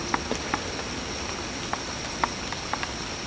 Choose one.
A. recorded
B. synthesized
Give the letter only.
A